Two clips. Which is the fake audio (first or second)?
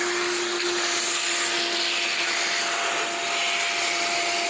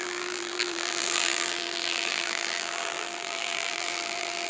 second